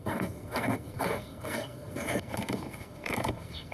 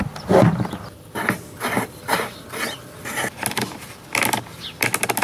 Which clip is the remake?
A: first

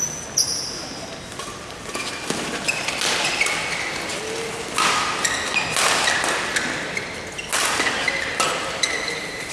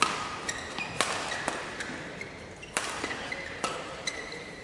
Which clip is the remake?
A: second